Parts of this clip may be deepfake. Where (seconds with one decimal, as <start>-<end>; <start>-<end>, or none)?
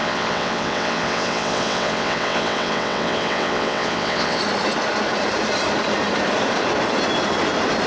0.0-4.4